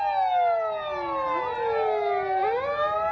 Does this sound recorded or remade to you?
recorded